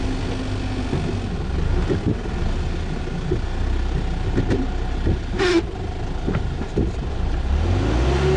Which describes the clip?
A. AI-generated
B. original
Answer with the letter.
B